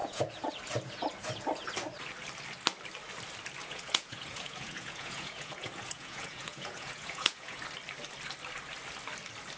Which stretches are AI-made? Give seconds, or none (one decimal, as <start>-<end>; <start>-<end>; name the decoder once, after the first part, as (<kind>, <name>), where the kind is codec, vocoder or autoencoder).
0.0-0.5 (vocoder, Vocos); 3.6-7.6